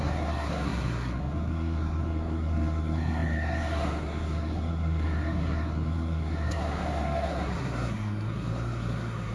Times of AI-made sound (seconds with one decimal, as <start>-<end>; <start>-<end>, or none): 0.0-9.3